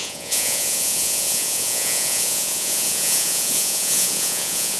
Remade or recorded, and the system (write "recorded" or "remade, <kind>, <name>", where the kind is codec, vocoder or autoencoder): remade, vocoder, Vocos